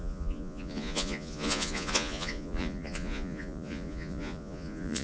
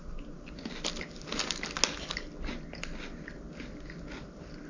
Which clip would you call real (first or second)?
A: second